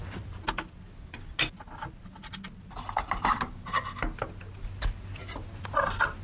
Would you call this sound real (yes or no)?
yes